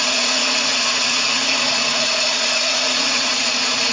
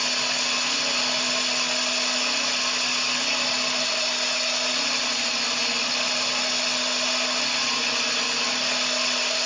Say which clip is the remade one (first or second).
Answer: first